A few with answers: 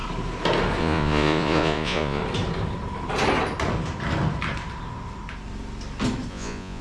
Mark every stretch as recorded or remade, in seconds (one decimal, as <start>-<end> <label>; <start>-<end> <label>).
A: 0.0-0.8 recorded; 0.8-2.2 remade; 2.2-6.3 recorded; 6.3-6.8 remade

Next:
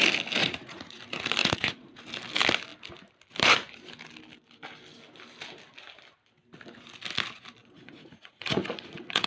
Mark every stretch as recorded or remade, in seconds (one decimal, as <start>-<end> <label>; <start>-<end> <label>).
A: 0.0-0.4 recorded; 0.4-1.0 remade; 1.0-1.4 recorded; 1.4-2.0 remade; 2.0-7.6 recorded; 7.6-9.3 remade

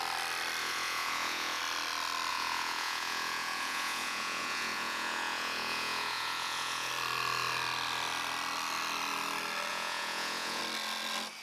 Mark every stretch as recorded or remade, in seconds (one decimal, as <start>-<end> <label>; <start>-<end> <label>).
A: 0.0-0.6 recorded; 0.6-1.6 remade; 1.6-2.3 recorded; 2.3-6.9 remade; 6.9-9.7 recorded; 9.7-10.6 remade; 10.6-11.4 recorded

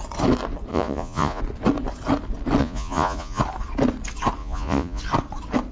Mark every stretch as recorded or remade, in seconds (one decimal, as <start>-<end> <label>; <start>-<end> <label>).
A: 0.0-0.7 recorded; 0.7-1.4 remade; 1.4-2.6 recorded; 2.6-3.4 remade; 3.4-4.4 recorded; 4.4-5.0 remade; 5.0-5.7 recorded

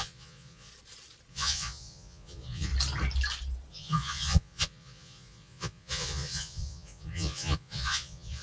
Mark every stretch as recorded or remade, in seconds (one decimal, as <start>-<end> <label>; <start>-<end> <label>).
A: 0.0-0.7 remade; 0.7-1.3 recorded; 1.3-2.7 remade; 2.7-3.7 recorded; 3.7-8.4 remade

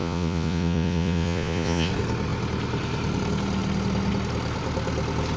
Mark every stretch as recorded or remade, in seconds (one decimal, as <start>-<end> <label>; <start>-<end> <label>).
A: 0.0-1.9 remade; 1.9-5.4 recorded

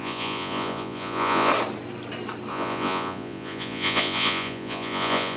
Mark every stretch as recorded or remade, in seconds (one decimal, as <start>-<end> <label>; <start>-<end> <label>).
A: 0.0-1.5 remade; 1.5-2.5 recorded; 2.5-5.4 remade

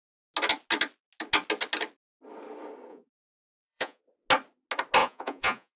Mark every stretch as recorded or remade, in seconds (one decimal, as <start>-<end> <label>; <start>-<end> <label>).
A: 0.0-2.9 recorded; 2.9-4.0 remade; 4.0-5.0 recorded; 5.0-5.8 remade